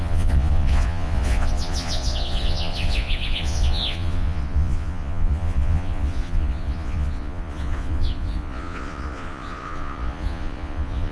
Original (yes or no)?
no